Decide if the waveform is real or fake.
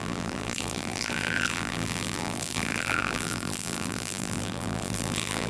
fake